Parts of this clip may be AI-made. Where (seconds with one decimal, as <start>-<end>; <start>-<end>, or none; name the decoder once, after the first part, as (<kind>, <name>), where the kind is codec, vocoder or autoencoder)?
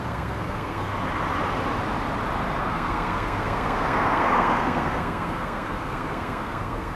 0.0-0.9 (codec, SNAC); 2.6-6.9